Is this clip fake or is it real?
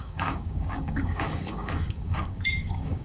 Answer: fake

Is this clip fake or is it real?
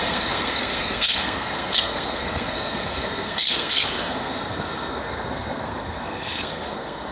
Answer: fake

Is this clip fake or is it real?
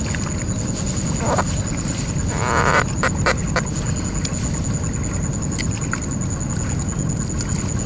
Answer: real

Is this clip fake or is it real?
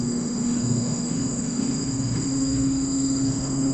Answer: fake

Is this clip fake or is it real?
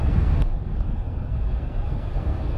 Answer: fake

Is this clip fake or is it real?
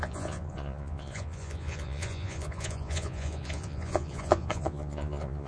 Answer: fake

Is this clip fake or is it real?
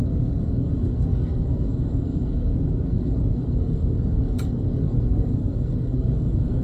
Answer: fake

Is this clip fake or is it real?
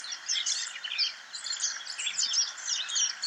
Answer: real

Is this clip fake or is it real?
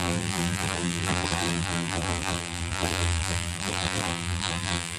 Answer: fake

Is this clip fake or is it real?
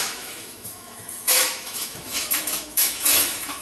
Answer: fake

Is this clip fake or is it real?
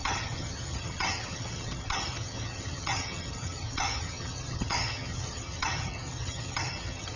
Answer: fake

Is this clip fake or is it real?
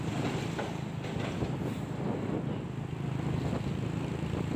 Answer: real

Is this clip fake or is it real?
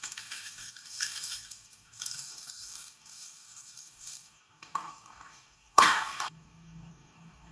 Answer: fake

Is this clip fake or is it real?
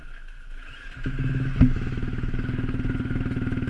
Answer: fake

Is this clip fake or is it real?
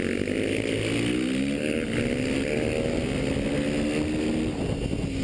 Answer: real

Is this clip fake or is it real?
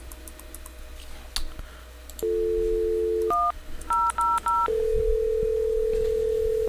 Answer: real